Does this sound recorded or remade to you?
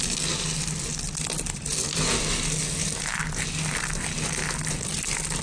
recorded